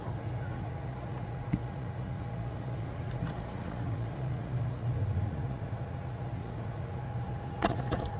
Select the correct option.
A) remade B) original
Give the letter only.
A